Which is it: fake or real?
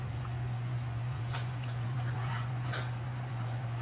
fake